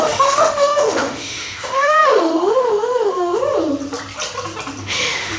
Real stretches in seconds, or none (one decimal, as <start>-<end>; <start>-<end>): 3.4-4.8